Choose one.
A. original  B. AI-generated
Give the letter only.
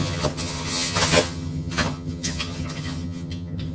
B